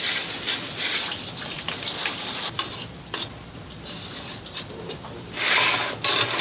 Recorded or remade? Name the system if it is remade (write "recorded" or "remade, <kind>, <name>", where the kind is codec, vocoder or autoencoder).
recorded